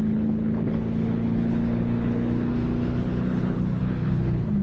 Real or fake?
fake